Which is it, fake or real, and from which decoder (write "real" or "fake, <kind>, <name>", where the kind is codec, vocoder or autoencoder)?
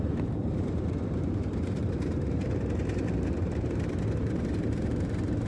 fake, vocoder, BigVGAN v2